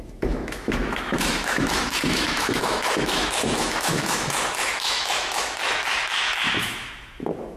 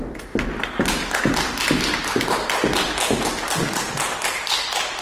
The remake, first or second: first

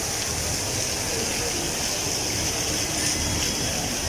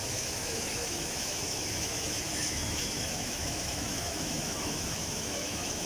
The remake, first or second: second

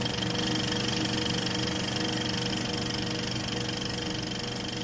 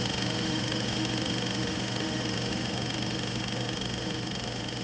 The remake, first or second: second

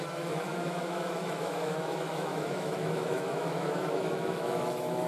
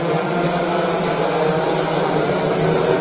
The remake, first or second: first